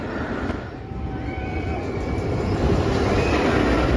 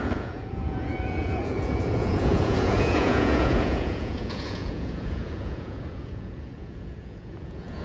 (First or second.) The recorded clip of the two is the first